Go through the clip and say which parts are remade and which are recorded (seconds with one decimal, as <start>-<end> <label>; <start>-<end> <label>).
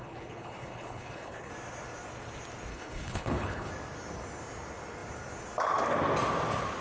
0.0-1.5 remade; 1.5-2.7 recorded; 2.7-3.7 remade; 3.7-6.8 recorded